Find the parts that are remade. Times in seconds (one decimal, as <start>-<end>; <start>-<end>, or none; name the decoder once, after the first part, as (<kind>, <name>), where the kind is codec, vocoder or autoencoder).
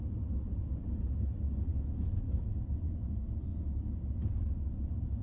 none